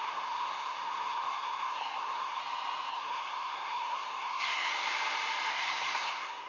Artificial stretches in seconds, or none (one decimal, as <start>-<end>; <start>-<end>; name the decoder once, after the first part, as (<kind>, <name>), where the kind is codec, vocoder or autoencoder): 0.0-2.4 (codec, SNAC); 2.9-4.7; 5.5-6.5